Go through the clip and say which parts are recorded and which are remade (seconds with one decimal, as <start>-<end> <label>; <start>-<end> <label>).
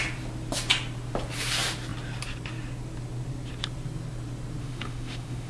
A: 0.0-4.6 recorded; 4.6-5.5 remade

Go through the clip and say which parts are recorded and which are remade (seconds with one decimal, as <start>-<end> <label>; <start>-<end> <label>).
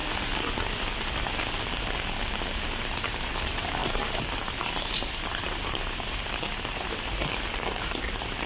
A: 0.0-2.3 recorded; 2.3-8.5 remade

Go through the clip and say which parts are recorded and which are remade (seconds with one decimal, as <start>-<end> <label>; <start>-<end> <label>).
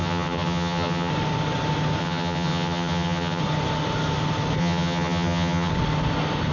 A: 0.0-1.1 remade; 1.1-2.0 recorded; 2.0-3.4 remade; 3.4-4.6 recorded; 4.6-5.7 remade; 5.7-6.5 recorded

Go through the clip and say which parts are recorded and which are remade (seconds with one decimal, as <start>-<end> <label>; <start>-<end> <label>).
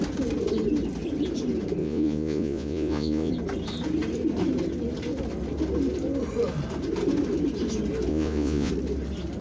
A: 0.0-1.8 recorded; 1.8-3.3 remade; 3.3-8.1 recorded; 8.1-8.7 remade; 8.7-9.4 recorded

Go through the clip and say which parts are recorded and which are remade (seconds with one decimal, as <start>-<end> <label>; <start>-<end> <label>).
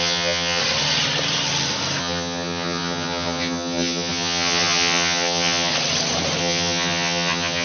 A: 0.0-0.6 remade; 0.6-2.0 recorded; 2.0-5.7 remade; 5.7-6.4 recorded; 6.4-7.6 remade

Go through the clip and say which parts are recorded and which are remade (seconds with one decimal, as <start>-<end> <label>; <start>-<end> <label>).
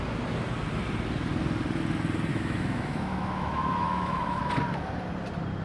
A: 0.0-2.3 recorded; 2.3-4.5 remade; 4.5-5.6 recorded